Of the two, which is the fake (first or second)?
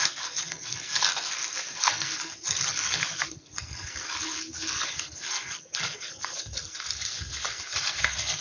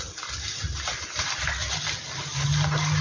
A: first